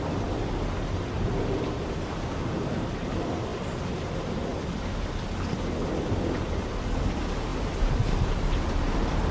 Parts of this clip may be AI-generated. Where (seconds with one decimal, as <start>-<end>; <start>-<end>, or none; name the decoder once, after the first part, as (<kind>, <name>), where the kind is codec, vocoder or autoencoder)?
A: none